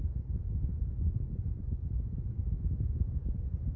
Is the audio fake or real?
real